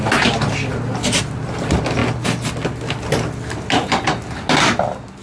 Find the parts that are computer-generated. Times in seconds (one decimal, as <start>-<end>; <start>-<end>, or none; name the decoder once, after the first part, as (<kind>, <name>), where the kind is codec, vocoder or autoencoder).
none